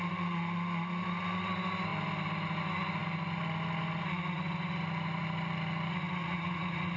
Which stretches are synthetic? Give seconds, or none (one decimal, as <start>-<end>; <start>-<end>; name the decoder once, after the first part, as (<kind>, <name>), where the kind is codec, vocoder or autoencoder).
6.2-7.0 (vocoder, Vocos)